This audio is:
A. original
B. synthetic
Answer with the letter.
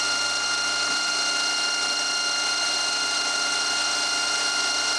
A